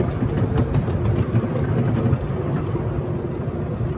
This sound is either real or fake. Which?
real